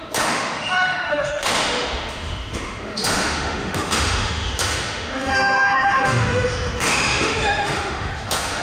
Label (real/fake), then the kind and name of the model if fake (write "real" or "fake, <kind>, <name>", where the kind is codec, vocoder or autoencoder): fake, autoencoder, DAC-VAE